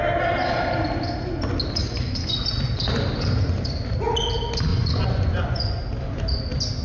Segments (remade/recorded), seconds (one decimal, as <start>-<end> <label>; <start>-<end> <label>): 0.0-1.8 recorded; 1.8-2.3 remade; 2.3-4.7 recorded; 4.7-5.8 remade; 5.8-6.8 recorded